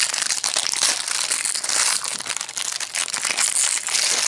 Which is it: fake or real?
real